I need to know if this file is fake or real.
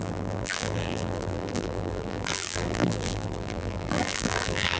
fake